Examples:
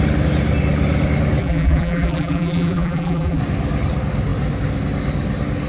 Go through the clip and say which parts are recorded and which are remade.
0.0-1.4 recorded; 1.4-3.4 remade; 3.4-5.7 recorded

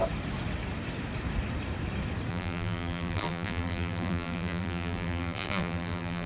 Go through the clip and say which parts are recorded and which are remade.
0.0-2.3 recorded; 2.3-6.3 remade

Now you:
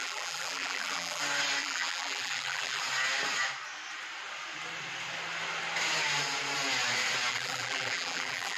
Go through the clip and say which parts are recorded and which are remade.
0.0-1.2 remade; 1.2-1.6 recorded; 1.6-2.8 remade; 2.8-7.3 recorded; 7.3-8.6 remade

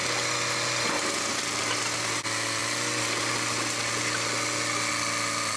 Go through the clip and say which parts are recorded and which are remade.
0.0-5.6 recorded